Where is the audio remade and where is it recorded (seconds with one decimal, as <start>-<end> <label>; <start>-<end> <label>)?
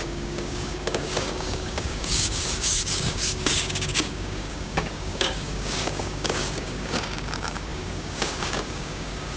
0.0-9.4 remade